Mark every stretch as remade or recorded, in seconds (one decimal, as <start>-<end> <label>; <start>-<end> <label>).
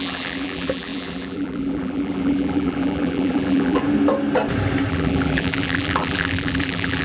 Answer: 0.0-3.8 remade; 3.8-4.9 recorded; 4.9-7.0 remade